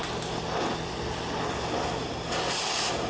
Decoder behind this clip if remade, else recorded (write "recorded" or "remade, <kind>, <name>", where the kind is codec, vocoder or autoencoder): recorded